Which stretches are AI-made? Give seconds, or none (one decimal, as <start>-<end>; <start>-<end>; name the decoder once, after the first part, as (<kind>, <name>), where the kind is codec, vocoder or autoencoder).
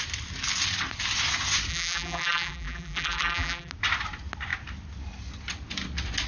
1.7-3.7 (vocoder, BigVGAN v2)